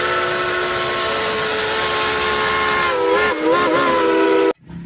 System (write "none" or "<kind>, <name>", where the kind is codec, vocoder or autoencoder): none